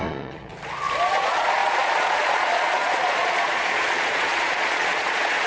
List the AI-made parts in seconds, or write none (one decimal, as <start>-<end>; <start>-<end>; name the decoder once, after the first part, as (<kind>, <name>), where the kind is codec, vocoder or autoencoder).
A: 0.0-0.5 (vocoder, Vocos); 1.1-5.5